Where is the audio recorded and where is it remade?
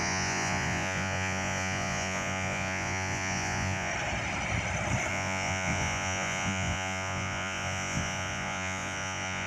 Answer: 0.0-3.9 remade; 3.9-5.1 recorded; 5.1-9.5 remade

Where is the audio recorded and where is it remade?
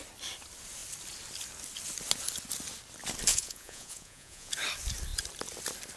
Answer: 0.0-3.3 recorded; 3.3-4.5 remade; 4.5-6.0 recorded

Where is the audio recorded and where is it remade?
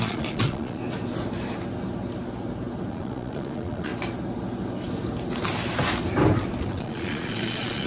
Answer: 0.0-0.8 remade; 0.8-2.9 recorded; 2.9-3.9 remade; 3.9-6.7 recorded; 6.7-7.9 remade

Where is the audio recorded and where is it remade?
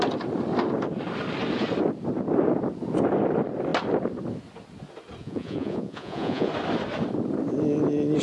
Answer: 0.0-5.2 recorded; 5.2-6.5 remade; 6.5-8.2 recorded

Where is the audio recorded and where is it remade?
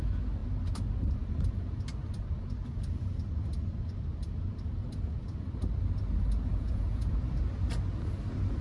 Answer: 0.0-6.5 recorded; 6.5-7.1 remade; 7.1-8.6 recorded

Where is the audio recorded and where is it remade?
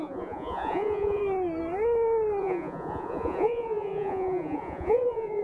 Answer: 0.0-1.2 remade; 1.2-2.4 recorded; 2.4-5.4 remade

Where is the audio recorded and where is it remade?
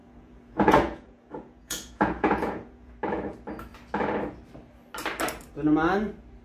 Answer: 0.0-2.9 remade; 2.9-6.4 recorded